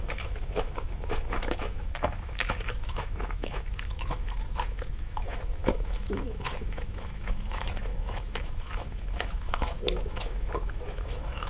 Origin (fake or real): fake